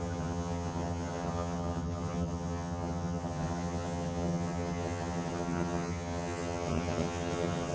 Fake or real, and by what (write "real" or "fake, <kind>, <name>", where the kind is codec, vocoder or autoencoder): fake, vocoder, HiFi-GAN